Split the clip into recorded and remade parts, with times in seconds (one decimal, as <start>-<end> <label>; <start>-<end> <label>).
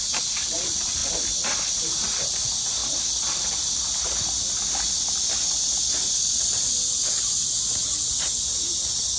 0.0-1.0 remade; 1.0-1.7 recorded; 1.7-2.8 remade; 2.8-7.1 recorded; 7.1-9.2 remade